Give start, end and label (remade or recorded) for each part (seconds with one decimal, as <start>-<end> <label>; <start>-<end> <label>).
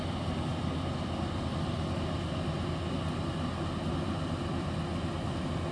0.0-5.7 recorded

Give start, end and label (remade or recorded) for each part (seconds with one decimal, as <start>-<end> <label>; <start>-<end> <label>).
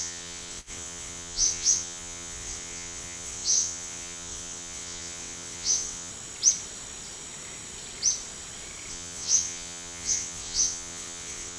0.0-6.1 remade; 6.1-8.9 recorded; 8.9-11.6 remade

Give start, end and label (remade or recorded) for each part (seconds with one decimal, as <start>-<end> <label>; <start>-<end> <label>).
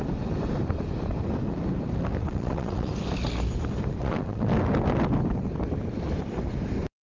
0.0-2.2 recorded; 2.2-2.9 remade; 2.9-4.0 recorded; 4.0-4.5 remade; 4.5-7.0 recorded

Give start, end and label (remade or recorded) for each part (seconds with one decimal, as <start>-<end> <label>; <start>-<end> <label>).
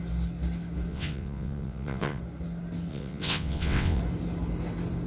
0.0-0.9 recorded; 0.9-2.2 remade; 2.2-2.9 recorded; 2.9-4.0 remade; 4.0-5.1 recorded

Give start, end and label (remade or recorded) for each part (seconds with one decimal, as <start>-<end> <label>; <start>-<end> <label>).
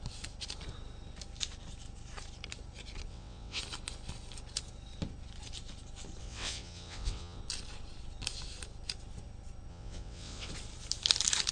0.0-3.1 recorded; 3.1-3.6 remade; 3.6-6.2 recorded; 6.2-7.4 remade; 7.4-9.7 recorded; 9.7-10.5 remade; 10.5-11.5 recorded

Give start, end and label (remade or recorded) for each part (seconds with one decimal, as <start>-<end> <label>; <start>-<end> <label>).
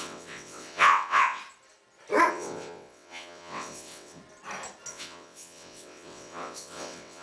0.0-1.4 remade; 1.4-2.3 recorded; 2.3-4.2 remade; 4.2-4.9 recorded; 4.9-7.2 remade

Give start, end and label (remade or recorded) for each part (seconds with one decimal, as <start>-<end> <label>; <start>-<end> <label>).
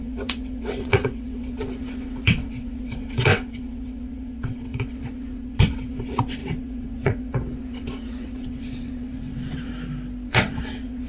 0.0-9.7 remade; 9.7-10.3 recorded; 10.3-11.1 remade